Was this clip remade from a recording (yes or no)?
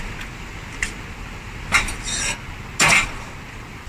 no